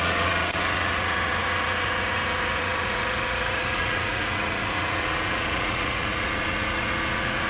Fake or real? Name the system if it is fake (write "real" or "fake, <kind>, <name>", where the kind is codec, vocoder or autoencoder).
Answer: fake, vocoder, Vocos